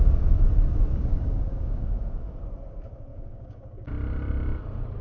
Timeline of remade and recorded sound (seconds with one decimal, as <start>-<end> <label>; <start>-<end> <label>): 0.0-0.9 recorded; 0.9-2.0 remade; 2.0-3.1 recorded; 3.1-3.9 remade; 3.9-5.0 recorded